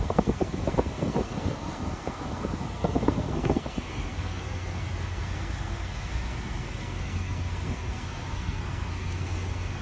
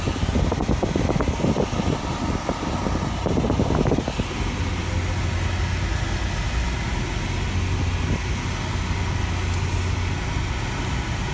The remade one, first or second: first